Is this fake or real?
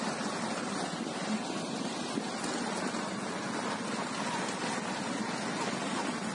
real